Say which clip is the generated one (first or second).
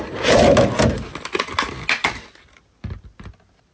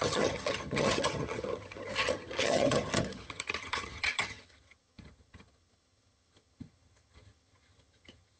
second